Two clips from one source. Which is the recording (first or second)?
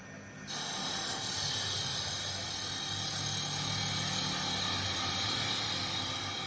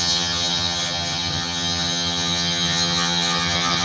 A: first